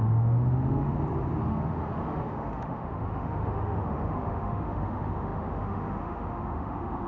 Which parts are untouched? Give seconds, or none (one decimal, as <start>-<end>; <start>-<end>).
0.9-1.5